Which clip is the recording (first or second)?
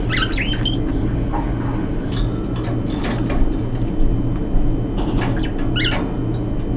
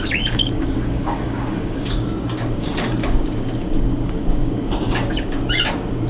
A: first